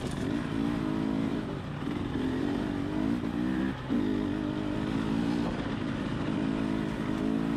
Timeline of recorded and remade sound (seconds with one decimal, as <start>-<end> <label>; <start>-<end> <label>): 0.0-1.3 recorded; 1.3-2.7 remade; 2.7-7.6 recorded